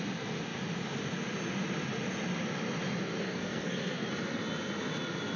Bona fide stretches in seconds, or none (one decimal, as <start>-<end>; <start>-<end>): 0.0-3.2; 4.1-5.4